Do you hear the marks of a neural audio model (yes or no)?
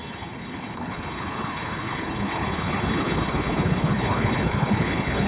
yes